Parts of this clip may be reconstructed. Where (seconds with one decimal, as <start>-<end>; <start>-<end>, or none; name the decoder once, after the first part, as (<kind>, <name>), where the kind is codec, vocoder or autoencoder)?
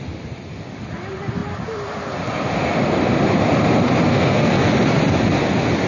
4.1-4.7 (codec, SNAC)